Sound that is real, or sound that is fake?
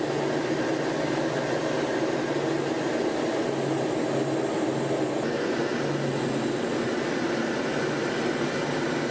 real